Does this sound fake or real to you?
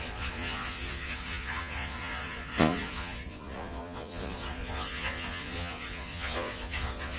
fake